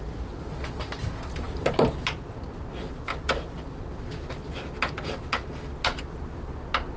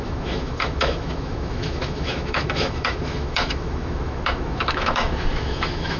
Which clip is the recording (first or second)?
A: first